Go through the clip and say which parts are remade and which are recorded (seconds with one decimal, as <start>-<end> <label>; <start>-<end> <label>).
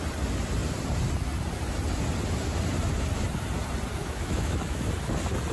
0.0-4.0 recorded; 4.0-4.9 remade; 4.9-5.5 recorded